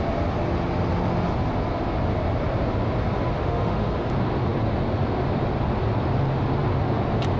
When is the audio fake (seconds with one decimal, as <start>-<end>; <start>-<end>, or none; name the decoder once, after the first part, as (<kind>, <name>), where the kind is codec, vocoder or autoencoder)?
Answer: 3.3-3.9 (autoencoder, DAC-VAE)